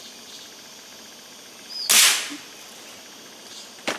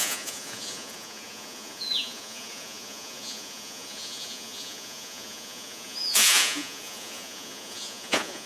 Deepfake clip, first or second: second